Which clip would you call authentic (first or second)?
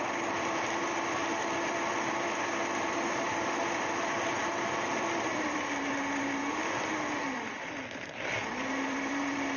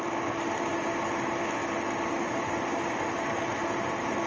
second